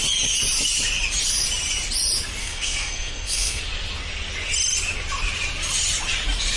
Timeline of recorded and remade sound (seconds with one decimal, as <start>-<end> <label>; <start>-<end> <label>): 0.0-2.4 recorded; 2.4-3.6 remade; 3.6-6.6 recorded